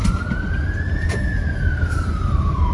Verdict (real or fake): fake